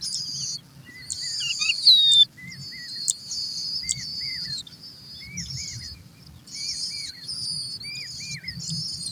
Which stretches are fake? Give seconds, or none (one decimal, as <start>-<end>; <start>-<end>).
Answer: 4.1-6.2